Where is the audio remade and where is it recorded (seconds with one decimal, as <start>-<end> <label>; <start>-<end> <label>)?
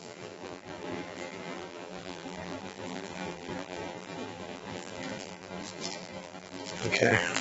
0.0-7.4 remade